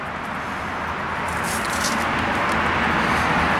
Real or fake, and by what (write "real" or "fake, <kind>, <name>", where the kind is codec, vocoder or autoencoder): real